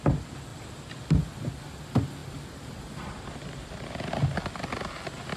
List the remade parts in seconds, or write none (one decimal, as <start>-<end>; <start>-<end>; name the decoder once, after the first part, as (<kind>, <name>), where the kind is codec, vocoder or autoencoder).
none

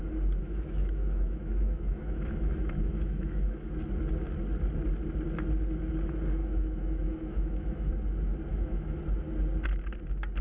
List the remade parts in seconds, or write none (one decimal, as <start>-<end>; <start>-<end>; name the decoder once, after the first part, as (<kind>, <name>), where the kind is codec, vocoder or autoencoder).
0.4-3.7 (autoencoder, DAC-VAE); 6.4-7.9; 8.5-9.0